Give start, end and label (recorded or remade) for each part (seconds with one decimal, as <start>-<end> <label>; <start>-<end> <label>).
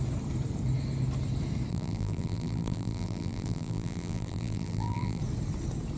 0.0-1.7 recorded; 1.7-5.2 remade; 5.2-6.0 recorded